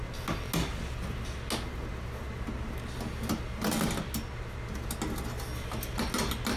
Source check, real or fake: real